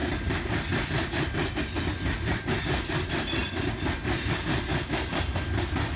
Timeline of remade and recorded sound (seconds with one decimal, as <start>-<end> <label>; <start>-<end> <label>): 0.0-6.0 recorded